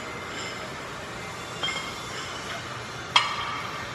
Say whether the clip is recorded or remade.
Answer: recorded